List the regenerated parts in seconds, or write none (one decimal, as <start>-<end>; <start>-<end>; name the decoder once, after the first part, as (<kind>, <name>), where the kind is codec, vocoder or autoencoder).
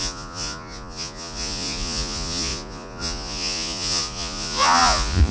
0.0-5.3 (vocoder, Vocos)